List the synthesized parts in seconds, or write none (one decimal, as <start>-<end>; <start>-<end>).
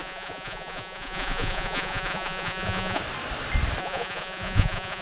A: 0.0-3.0; 3.8-5.0